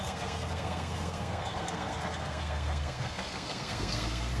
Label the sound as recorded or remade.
remade